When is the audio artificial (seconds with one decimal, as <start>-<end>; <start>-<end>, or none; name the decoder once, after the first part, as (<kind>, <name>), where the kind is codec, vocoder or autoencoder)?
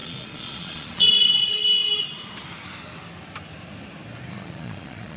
0.0-1.6 (vocoder, Vocos); 4.3-5.2